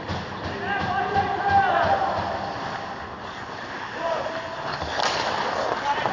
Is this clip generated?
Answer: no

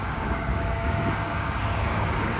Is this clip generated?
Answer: yes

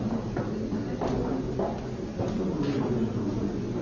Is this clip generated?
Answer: no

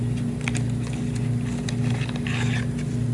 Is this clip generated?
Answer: no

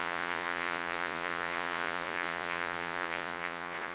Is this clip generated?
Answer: yes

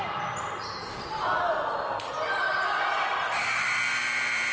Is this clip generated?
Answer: yes